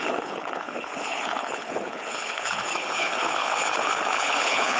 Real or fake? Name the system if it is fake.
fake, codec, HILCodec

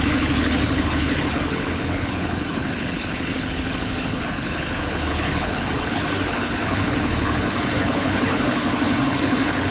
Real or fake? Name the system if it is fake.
fake, codec, HILCodec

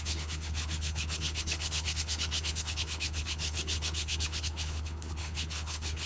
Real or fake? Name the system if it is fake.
fake, codec, HILCodec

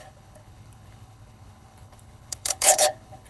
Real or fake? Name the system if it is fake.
fake, codec, HILCodec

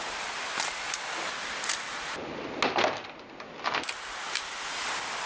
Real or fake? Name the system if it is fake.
real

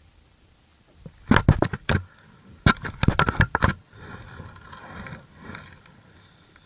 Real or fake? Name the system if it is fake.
real